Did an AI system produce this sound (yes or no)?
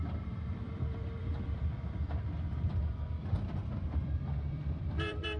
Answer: yes